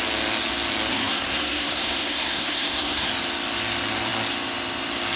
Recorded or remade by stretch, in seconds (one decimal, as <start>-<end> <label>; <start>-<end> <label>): 0.0-0.9 recorded; 0.9-3.1 remade; 3.1-5.2 recorded